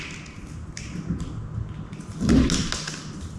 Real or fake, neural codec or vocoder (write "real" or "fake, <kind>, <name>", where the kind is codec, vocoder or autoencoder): real